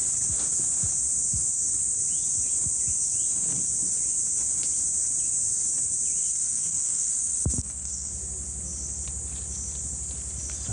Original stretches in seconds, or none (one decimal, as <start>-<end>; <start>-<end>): 0.0-6.2; 8.1-10.7